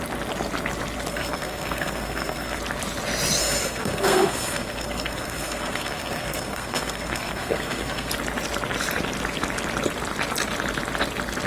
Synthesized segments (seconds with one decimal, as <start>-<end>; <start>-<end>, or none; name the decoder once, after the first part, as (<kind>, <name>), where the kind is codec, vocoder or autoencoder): 1.1-2.6 (codec, SNAC); 3.4-8.1